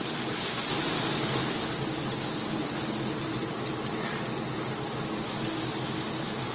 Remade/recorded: recorded